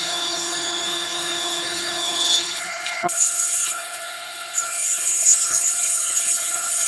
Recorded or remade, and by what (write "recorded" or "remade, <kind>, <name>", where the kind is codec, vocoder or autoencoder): remade, codec, HILCodec